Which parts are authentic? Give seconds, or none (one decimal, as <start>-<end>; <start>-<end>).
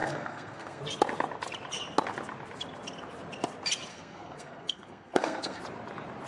0.8-3.9; 5.6-6.3